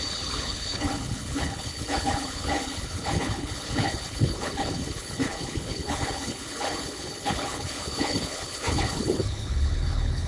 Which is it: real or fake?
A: fake